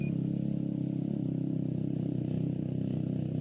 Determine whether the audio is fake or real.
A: real